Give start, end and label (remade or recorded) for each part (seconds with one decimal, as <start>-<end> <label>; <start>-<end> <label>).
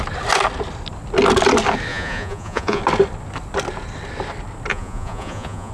0.0-1.9 recorded; 1.9-2.8 remade; 2.8-4.7 recorded; 4.7-5.7 remade